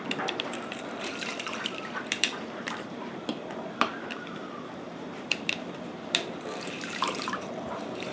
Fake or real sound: fake